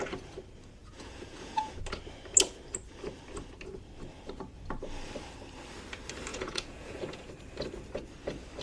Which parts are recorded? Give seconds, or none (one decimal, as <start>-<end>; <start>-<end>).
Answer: 0.0-0.8; 1.8-6.3; 7.3-8.6